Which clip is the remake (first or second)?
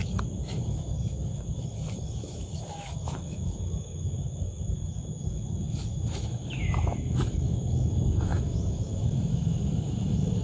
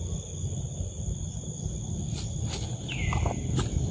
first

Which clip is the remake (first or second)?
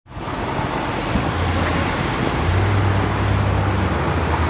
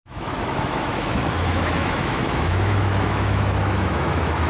second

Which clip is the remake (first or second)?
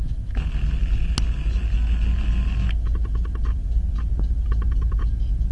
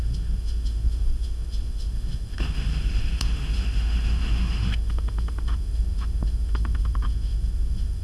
second